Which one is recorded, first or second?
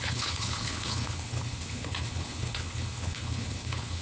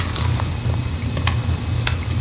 second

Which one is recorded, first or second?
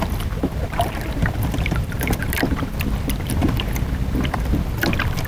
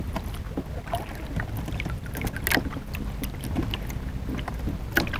second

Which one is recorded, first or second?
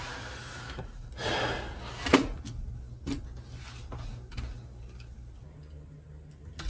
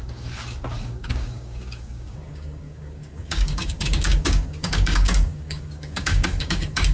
first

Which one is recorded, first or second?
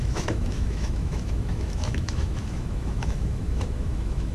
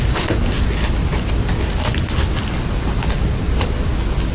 second